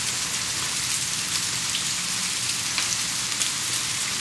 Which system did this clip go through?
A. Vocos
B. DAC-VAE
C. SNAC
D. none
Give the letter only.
D